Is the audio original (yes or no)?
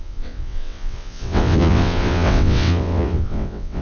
no